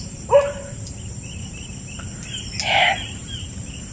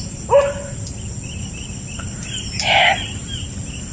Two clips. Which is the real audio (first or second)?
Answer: second